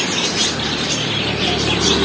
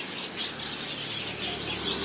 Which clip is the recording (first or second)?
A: second